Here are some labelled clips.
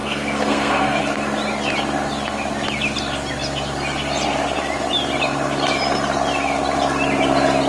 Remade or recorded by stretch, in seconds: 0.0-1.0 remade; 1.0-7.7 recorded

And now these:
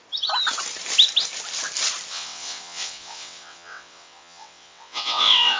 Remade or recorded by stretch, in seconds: 0.0-2.1 recorded; 2.1-5.6 remade